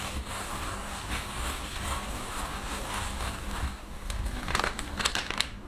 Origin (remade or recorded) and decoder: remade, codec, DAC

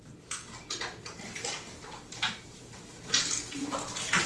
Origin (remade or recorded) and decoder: remade, vocoder, BigVGAN v2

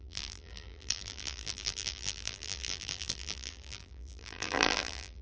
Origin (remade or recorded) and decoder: remade, vocoder, BigVGAN v2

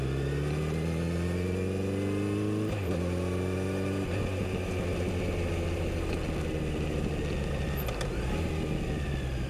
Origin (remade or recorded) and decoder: recorded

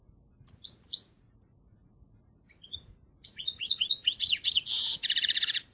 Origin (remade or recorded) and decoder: remade, vocoder, Vocos